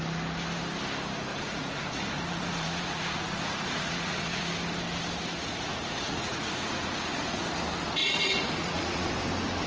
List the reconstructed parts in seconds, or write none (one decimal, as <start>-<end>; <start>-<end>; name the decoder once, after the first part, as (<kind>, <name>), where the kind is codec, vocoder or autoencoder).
1.3-4.5 (vocoder, Vocos); 5.7-7.4; 8.0-9.1